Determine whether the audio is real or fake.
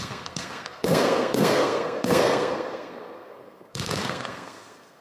fake